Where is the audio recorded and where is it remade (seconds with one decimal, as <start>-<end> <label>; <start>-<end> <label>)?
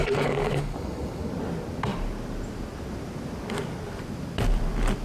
0.0-1.3 remade; 1.3-5.0 recorded